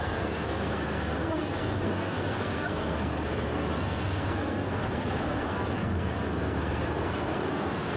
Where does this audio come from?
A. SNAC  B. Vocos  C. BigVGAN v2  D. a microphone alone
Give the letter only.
A